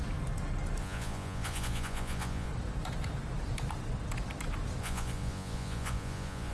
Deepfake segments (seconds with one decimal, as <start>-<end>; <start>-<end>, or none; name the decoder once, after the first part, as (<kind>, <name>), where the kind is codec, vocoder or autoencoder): 0.8-2.5 (vocoder, Vocos); 4.8-6.5